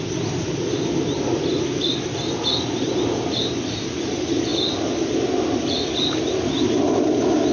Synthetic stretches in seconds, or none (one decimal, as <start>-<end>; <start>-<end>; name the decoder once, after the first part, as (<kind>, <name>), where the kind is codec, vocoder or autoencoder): none